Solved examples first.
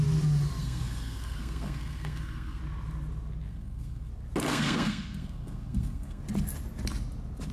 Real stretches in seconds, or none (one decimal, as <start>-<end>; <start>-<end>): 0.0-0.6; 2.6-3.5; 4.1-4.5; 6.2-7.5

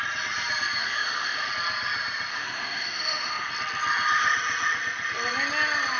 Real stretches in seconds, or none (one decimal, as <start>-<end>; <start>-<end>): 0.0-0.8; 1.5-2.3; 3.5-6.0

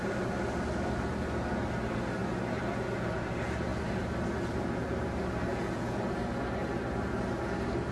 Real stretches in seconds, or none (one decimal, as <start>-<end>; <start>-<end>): 0.0-5.5; 6.0-7.9

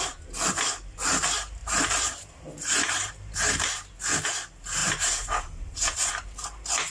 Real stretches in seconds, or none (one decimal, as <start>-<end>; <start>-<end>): 0.0-1.6; 3.9-4.8; 6.1-6.9

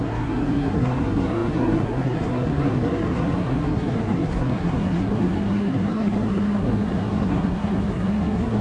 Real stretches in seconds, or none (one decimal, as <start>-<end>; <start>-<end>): none

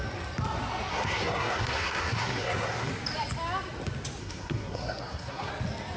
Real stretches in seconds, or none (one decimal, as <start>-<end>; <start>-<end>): 0.0-0.9; 2.9-4.2; 5.5-6.0